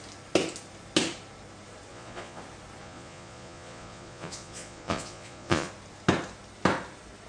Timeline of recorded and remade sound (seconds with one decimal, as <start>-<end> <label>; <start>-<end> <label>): 0.0-1.9 recorded; 1.9-2.4 remade; 2.4-2.8 recorded; 2.8-5.7 remade; 5.7-7.3 recorded